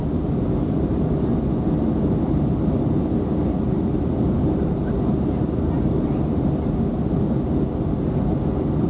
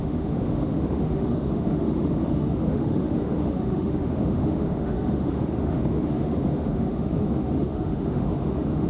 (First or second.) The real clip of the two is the first